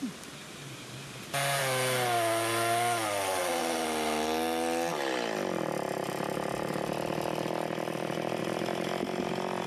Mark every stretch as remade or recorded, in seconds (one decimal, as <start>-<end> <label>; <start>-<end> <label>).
0.0-9.7 recorded